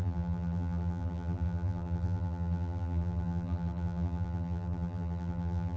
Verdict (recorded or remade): remade